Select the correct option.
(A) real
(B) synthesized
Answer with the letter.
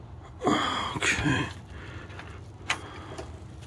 A